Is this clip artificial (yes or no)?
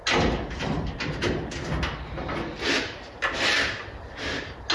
no